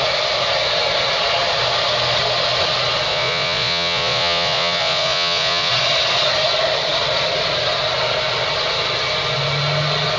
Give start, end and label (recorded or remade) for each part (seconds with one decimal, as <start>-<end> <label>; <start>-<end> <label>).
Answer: 0.0-3.1 recorded; 3.1-5.7 remade; 5.7-10.2 recorded